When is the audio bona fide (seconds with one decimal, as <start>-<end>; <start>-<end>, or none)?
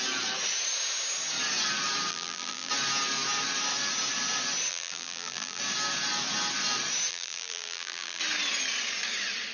0.0-2.1; 2.7-4.7; 5.6-7.1; 8.2-9.5